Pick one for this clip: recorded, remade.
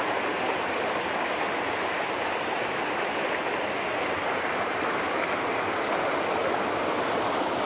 recorded